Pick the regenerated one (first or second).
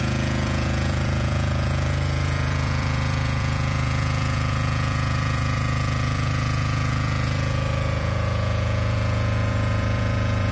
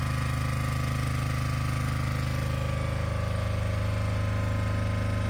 first